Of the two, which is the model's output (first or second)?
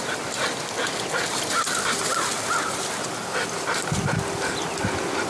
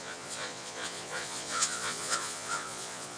second